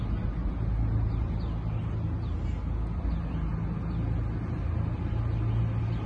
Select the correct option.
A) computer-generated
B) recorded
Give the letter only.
B